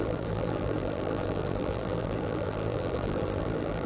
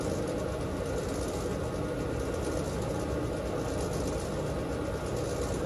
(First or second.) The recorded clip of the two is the second